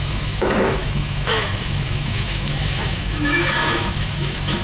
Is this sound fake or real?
fake